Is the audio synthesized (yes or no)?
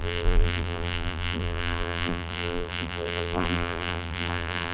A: yes